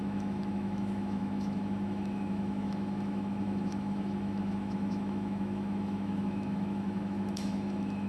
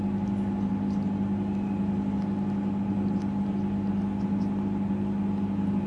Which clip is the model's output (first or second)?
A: first